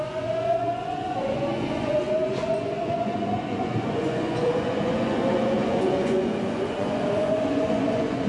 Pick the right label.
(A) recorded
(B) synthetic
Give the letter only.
B